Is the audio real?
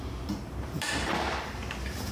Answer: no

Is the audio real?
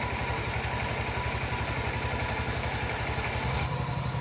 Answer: yes